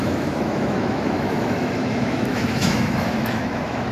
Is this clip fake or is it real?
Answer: fake